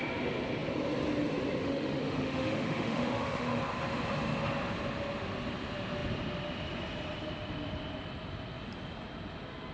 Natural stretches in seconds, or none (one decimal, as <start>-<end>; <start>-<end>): 0.0-1.6; 3.6-9.7

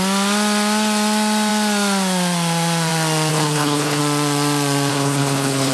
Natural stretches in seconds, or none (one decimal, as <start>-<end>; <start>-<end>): 0.0-3.3; 4.0-4.9

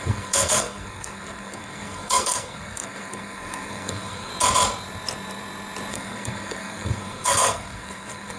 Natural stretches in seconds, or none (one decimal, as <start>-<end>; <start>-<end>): 4.3-5.9

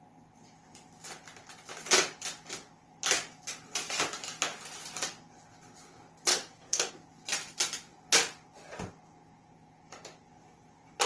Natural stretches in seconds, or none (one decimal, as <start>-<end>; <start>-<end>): 0.0-6.3; 6.9-11.1